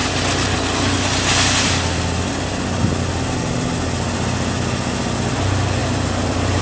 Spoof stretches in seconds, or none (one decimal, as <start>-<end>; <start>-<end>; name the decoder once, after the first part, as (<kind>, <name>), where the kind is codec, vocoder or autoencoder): 5.8-6.6 (vocoder, BigVGAN v2)